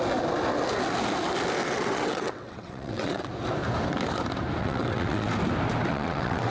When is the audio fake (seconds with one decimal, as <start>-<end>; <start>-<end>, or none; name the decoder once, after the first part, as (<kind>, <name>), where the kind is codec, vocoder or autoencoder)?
1.6-3.3 (vocoder, WaveNeXt); 4.6-5.3; 5.9-6.5